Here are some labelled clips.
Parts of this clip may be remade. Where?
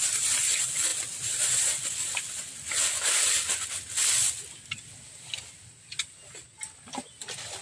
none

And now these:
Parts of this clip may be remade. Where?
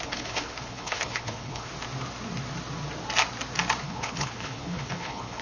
0.0-1.7 (codec, HILCodec); 3.8-5.4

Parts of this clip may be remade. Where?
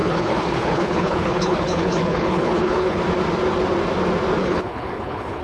0.0-3.0 (codec, HILCodec); 4.4-5.4